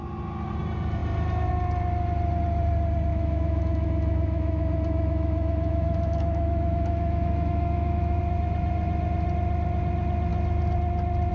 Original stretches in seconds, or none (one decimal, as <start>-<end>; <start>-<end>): 0.0-3.1; 8.2-11.3